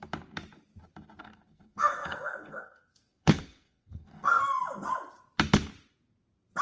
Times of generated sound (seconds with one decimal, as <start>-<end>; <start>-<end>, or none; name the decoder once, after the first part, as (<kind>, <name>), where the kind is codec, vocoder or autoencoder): 1.2-4.4 (codec, SNAC)